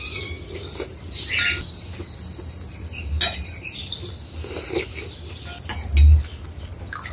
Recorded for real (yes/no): yes